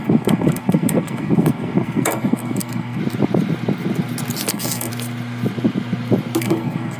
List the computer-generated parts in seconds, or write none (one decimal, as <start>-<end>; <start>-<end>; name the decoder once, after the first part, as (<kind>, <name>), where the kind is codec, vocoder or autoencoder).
0.0-3.0 (codec, SNAC); 4.5-4.9; 6.4-7.0